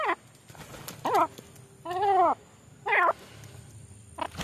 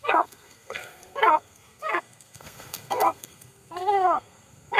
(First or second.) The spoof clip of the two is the second